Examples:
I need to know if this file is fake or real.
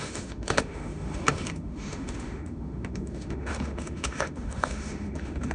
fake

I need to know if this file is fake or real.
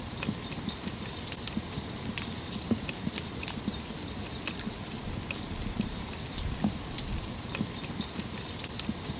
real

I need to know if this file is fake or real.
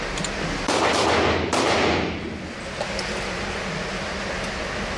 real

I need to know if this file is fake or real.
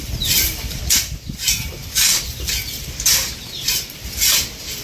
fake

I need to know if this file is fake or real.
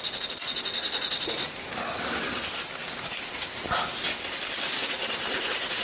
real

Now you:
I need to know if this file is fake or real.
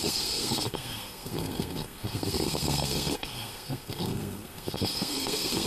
fake